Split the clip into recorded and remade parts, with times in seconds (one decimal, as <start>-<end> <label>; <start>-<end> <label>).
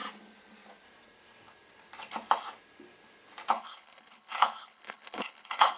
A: 0.0-3.5 recorded; 3.5-5.8 remade